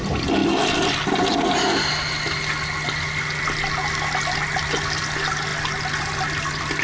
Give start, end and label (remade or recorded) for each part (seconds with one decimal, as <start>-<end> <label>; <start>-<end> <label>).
0.0-6.8 recorded

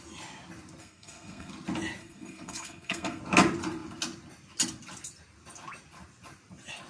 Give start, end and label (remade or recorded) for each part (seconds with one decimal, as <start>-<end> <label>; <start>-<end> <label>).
0.0-0.8 recorded; 0.8-1.5 remade; 1.5-2.0 recorded; 2.0-3.2 remade; 3.2-6.9 recorded

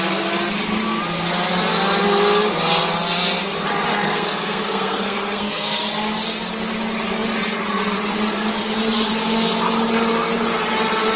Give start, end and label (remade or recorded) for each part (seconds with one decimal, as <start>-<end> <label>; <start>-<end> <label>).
0.0-3.9 recorded; 3.9-5.8 remade; 5.8-11.2 recorded

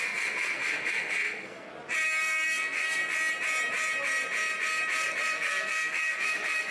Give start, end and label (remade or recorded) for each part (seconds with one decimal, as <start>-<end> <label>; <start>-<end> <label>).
0.0-1.7 remade; 1.7-2.2 recorded; 2.2-3.0 remade; 3.0-5.3 recorded; 5.3-6.7 remade